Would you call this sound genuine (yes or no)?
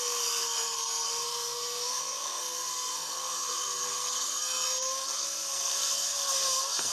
no